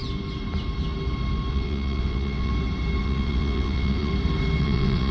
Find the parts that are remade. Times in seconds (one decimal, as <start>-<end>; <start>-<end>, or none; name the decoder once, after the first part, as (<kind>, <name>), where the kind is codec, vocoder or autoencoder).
1.5-2.5 (vocoder, WaveNeXt); 3.0-4.1; 4.6-5.1